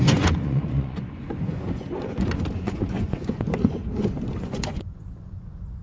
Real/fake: fake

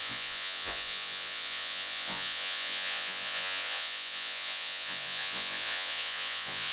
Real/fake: fake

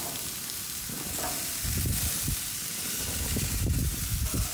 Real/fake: real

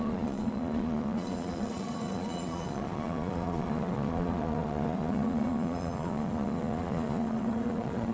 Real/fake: fake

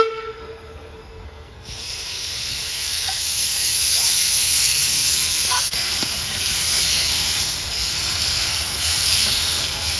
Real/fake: fake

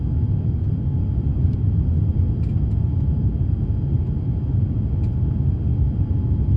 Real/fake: real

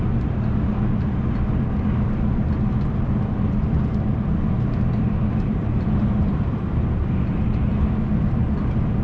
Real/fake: fake